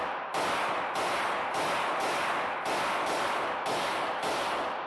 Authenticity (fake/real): real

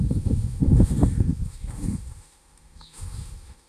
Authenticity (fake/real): fake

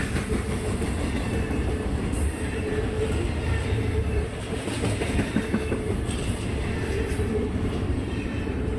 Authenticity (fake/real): fake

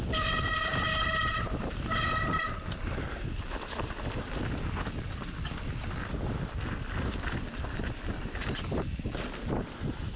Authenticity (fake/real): real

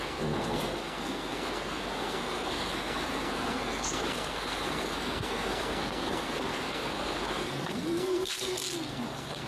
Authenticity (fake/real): fake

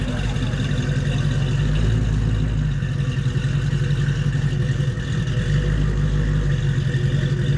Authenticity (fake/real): real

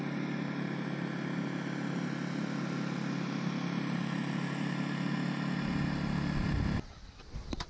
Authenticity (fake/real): real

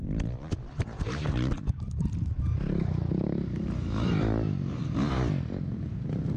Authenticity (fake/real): real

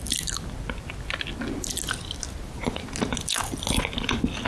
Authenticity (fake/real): real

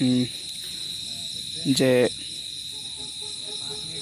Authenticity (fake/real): real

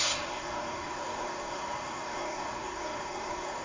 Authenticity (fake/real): fake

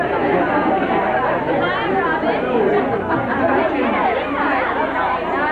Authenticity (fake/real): real